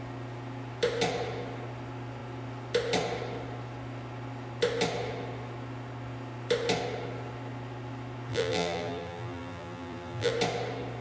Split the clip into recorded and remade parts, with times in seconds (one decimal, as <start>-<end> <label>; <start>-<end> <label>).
0.0-8.3 recorded; 8.3-10.3 remade; 10.3-11.0 recorded